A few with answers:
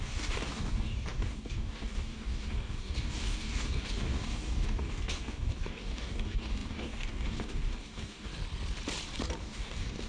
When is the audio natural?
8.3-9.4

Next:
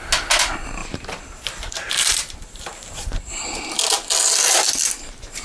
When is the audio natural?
0.0-0.8; 3.6-5.4

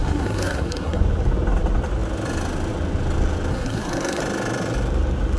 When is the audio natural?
1.0-3.5; 4.2-5.4

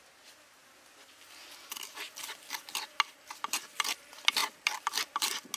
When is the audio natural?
0.0-5.6